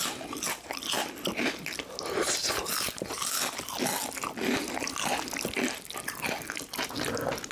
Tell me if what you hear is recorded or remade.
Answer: recorded